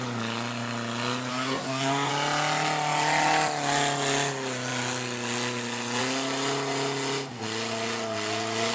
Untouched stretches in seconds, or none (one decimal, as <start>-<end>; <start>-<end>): 0.0-1.3; 2.1-8.7